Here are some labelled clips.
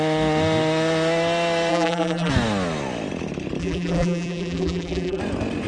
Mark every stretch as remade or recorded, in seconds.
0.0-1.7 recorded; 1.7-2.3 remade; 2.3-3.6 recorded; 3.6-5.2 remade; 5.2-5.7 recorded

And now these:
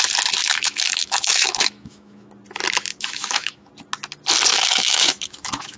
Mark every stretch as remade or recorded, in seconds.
0.0-0.4 recorded; 0.4-2.3 remade; 2.3-2.9 recorded; 2.9-3.7 remade; 3.7-4.5 recorded; 4.5-5.8 remade

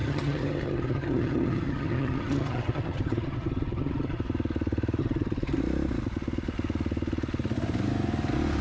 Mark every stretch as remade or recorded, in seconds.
0.0-4.2 remade; 4.2-5.0 recorded; 5.0-5.6 remade; 5.6-8.6 recorded

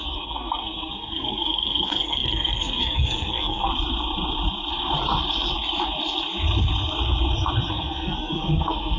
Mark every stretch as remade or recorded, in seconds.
0.0-3.7 remade; 3.7-7.7 recorded; 7.7-9.0 remade

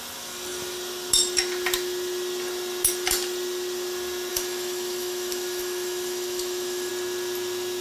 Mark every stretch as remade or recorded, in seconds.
0.0-4.3 recorded; 4.3-6.9 remade; 6.9-7.8 recorded

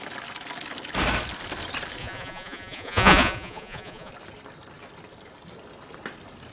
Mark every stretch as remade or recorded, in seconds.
0.0-2.0 recorded; 2.0-4.1 remade; 4.1-6.5 recorded

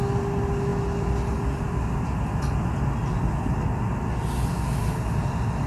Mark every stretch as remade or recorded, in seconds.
0.0-5.7 recorded